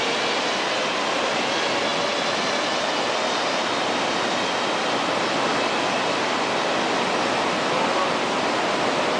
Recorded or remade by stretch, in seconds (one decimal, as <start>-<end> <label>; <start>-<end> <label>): 0.0-9.2 recorded

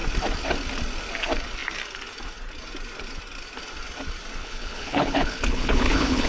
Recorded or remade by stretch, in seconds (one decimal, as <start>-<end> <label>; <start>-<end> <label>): 0.0-4.4 recorded; 4.4-6.3 remade

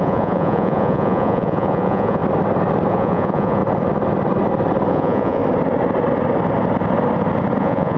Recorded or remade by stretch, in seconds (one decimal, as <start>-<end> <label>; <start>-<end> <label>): 0.0-2.2 remade; 2.2-2.9 recorded; 2.9-3.6 remade; 3.6-4.9 recorded; 4.9-5.4 remade; 5.4-7.6 recorded; 7.6-8.0 remade

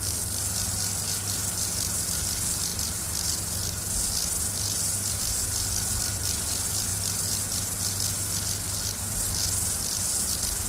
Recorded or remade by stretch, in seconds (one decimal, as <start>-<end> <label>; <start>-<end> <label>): 0.0-10.7 recorded

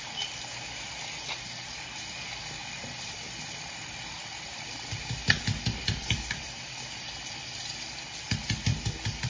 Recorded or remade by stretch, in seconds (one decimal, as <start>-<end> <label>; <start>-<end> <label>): 0.0-2.6 recorded; 2.6-7.7 remade; 7.7-8.7 recorded; 8.7-9.3 remade

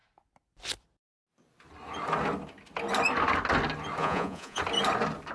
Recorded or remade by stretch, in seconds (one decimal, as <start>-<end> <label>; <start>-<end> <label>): 0.0-4.0 recorded; 4.0-4.6 remade; 4.6-5.3 recorded

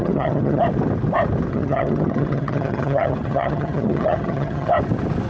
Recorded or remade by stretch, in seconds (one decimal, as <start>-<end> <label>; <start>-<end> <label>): 0.0-0.6 remade; 0.6-1.5 recorded; 1.5-4.7 remade; 4.7-5.3 recorded

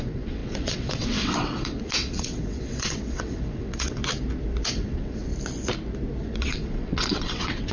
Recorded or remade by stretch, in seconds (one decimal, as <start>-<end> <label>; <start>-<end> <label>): 0.0-4.0 remade; 4.0-4.7 recorded; 4.7-5.3 remade; 5.3-6.2 recorded; 6.2-7.7 remade